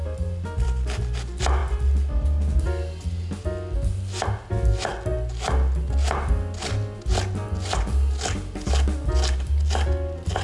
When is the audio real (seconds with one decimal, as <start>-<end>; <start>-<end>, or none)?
0.0-10.4